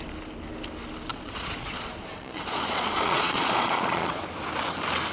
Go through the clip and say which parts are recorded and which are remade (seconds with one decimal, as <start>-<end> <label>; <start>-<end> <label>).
0.0-1.1 recorded; 1.1-4.2 remade; 4.2-5.1 recorded